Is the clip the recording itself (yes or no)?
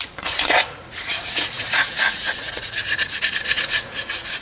no